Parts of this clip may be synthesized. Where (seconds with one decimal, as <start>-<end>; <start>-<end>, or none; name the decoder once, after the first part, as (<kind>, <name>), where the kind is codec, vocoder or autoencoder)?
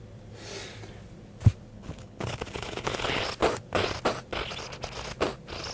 1.7-3.2 (codec, HILCodec)